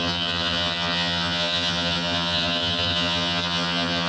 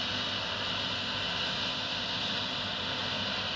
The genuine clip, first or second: second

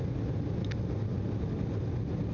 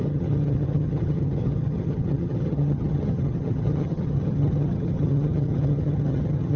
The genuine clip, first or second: first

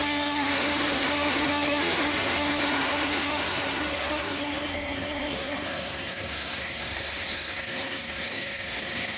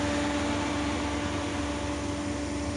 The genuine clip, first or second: second